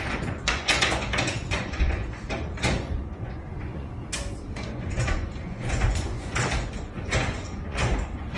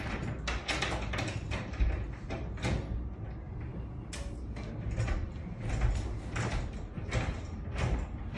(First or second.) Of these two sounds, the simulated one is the first